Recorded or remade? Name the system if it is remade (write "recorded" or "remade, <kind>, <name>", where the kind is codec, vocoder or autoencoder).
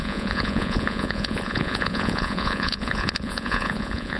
remade, vocoder, Vocos